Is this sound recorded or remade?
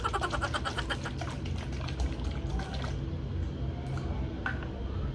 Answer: recorded